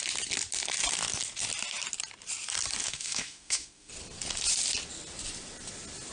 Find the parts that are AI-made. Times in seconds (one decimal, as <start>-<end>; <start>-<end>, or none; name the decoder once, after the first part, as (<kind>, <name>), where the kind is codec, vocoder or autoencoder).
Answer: 2.8-3.9 (autoencoder, DAC-VAE)